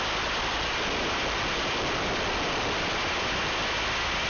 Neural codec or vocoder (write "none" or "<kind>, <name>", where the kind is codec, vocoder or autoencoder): none